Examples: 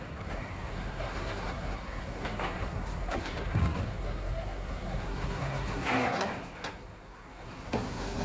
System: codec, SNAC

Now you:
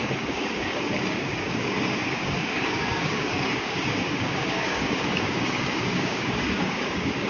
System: codec, DAC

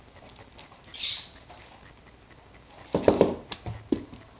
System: none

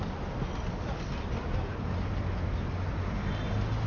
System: none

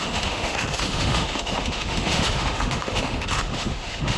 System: autoencoder, DAC-VAE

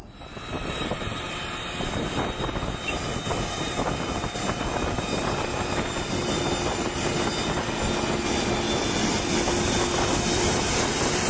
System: none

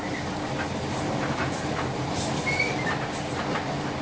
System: none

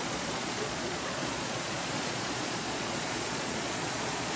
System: vocoder, Vocos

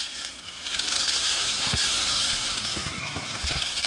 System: codec, SNAC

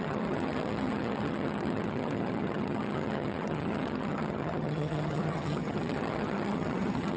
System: vocoder, HiFi-GAN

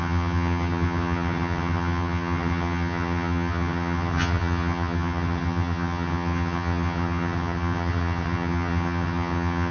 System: vocoder, HiFi-GAN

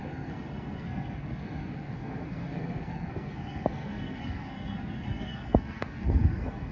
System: codec, SNAC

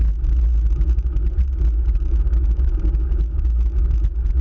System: none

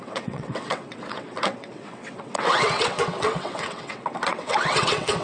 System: vocoder, WaveNeXt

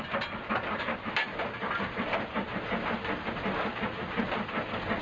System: none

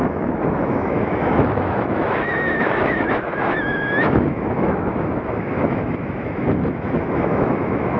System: autoencoder, DAC-VAE